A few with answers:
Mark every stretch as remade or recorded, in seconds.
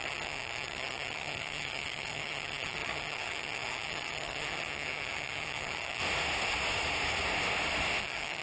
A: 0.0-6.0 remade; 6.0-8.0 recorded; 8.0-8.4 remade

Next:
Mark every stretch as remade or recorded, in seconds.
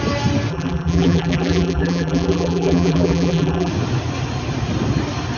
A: 0.0-0.5 recorded; 0.5-3.7 remade; 3.7-5.4 recorded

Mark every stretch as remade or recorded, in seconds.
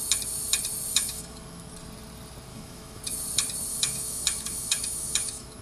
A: 0.0-0.9 recorded; 0.9-1.7 remade; 1.7-2.5 recorded; 2.5-3.0 remade; 3.0-3.7 recorded; 3.7-5.6 remade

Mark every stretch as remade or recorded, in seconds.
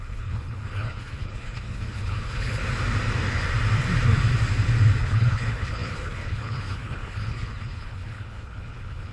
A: 0.0-2.6 remade; 2.6-5.0 recorded; 5.0-9.1 remade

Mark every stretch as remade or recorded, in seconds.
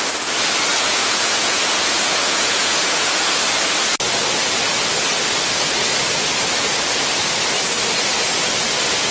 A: 0.0-0.7 recorded; 0.7-3.4 remade; 3.4-9.1 recorded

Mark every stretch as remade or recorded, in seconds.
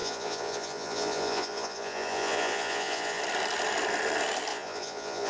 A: 0.0-3.2 remade; 3.2-4.5 recorded; 4.5-5.3 remade